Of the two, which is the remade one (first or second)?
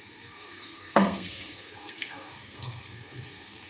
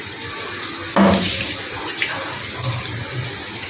first